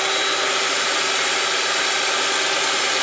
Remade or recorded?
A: recorded